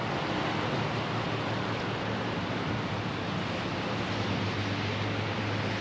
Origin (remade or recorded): recorded